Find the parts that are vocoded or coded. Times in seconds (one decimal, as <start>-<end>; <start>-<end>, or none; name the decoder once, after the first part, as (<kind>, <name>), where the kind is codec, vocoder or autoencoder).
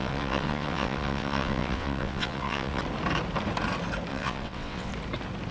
0.0-2.8 (vocoder, WaveNeXt); 4.1-4.9